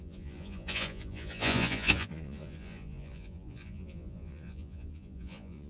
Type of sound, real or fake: fake